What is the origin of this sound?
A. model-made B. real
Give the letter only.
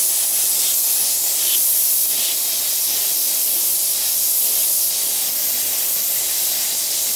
B